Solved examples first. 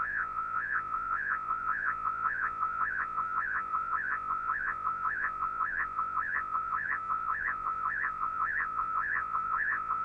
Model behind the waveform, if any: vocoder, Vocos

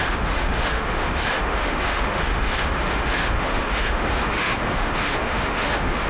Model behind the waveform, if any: autoencoder, DAC-VAE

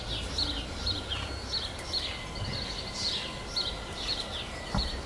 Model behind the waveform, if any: none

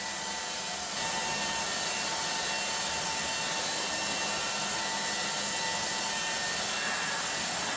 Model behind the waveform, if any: none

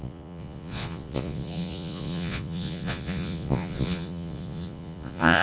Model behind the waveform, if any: vocoder, Vocos